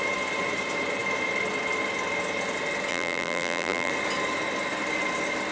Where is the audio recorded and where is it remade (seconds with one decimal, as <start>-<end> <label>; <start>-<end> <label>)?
0.0-2.9 recorded; 2.9-3.9 remade; 3.9-5.5 recorded